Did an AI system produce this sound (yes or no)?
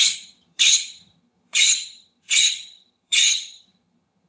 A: yes